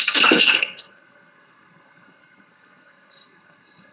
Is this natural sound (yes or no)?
no